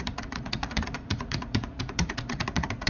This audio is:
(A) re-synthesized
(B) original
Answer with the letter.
A